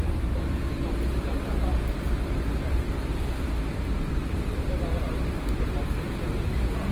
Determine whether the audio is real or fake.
fake